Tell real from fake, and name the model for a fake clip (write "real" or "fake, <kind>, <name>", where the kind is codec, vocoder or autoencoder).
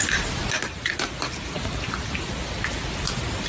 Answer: real